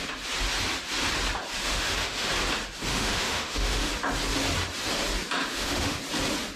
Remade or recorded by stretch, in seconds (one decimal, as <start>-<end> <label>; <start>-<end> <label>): 0.0-1.6 recorded; 1.6-2.3 remade; 2.3-2.9 recorded; 2.9-3.9 remade; 3.9-5.5 recorded; 5.5-6.0 remade; 6.0-6.6 recorded